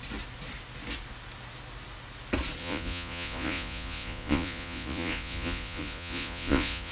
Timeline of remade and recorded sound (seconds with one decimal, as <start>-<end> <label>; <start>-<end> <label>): 0.0-2.6 recorded; 2.6-6.9 remade